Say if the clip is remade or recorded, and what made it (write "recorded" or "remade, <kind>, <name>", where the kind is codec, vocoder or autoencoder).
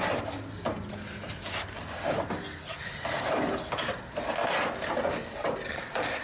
recorded